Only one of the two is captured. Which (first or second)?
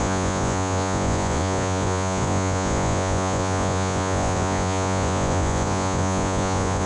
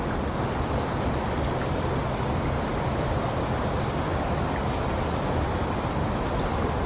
second